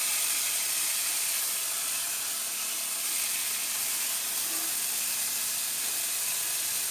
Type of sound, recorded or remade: recorded